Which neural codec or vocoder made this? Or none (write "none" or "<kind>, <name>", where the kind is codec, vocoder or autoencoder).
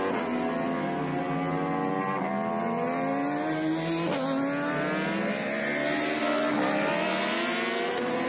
none